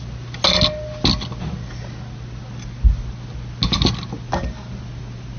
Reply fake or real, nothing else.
real